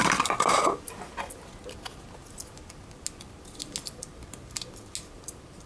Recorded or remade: recorded